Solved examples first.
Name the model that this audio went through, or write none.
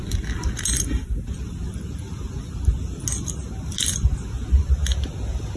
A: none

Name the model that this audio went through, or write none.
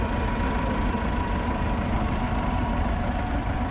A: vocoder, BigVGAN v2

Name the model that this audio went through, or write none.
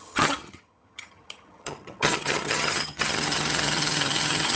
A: vocoder, HiFi-GAN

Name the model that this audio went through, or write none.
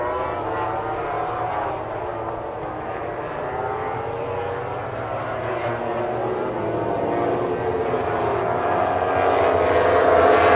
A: none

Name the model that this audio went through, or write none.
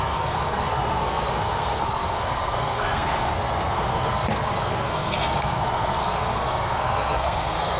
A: codec, SNAC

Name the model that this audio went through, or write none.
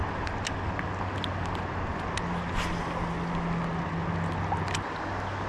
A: none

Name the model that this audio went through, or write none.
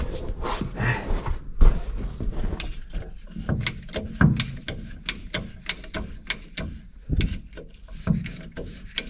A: none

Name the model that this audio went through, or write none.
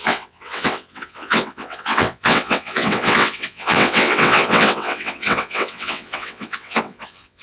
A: vocoder, WaveNeXt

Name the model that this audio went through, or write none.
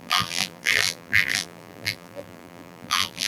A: vocoder, BigVGAN v2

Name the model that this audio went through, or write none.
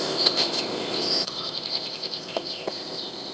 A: codec, ZipCodec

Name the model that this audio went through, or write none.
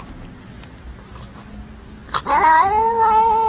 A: none